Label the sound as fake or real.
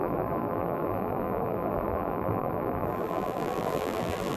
fake